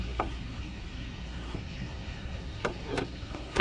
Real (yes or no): no